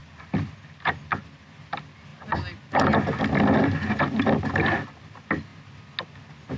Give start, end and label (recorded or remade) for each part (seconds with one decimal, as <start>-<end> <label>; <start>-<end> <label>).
0.0-6.6 recorded